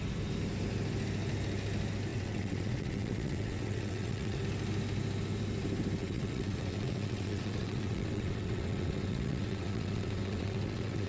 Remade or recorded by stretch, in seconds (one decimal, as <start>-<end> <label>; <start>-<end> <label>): 0.0-2.1 recorded; 2.1-4.4 remade; 4.4-6.0 recorded; 6.0-11.1 remade